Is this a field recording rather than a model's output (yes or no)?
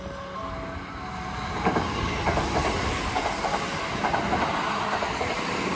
yes